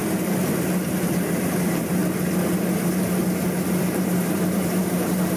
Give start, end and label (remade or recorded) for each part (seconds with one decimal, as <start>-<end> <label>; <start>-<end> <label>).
0.0-0.9 recorded; 0.9-2.0 remade; 2.0-2.7 recorded; 2.7-3.2 remade; 3.2-3.8 recorded; 3.8-5.4 remade